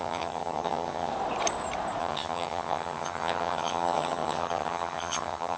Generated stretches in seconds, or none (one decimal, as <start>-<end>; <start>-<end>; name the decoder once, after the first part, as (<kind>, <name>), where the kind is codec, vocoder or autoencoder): 0.0-1.1 (vocoder, HiFi-GAN); 2.0-5.6